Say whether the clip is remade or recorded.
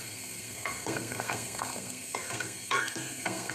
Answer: remade